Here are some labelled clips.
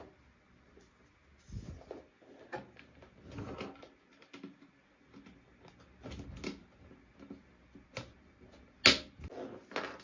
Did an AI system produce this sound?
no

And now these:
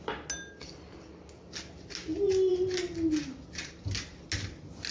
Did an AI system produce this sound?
no